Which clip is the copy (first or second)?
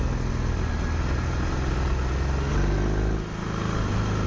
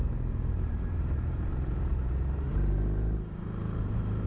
second